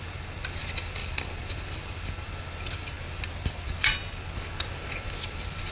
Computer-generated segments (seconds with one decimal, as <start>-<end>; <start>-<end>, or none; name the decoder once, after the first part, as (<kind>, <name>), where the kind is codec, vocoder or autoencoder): 1.0-2.2 (vocoder, BigVGAN v2)